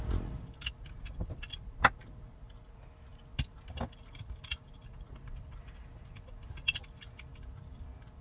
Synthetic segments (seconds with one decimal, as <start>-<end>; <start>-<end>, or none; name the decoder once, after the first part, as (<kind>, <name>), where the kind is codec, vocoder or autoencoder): none